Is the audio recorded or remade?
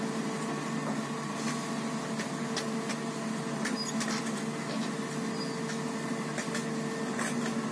recorded